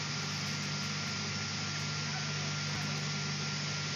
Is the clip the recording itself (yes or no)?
yes